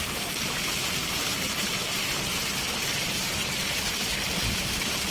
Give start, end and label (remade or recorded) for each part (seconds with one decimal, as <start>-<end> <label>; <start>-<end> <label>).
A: 0.0-2.0 remade; 2.0-2.9 recorded; 2.9-3.4 remade; 3.4-4.6 recorded; 4.6-5.1 remade

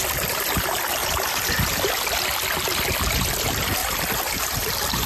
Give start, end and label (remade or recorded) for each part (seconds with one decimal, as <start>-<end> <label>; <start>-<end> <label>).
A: 0.0-5.1 recorded

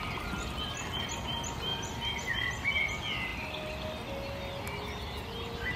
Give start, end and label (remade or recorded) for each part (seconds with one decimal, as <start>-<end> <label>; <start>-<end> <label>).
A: 0.0-1.7 recorded; 1.7-2.3 remade; 2.3-5.8 recorded

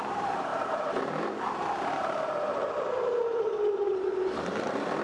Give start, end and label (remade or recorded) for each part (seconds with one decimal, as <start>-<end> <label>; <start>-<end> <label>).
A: 0.0-5.0 remade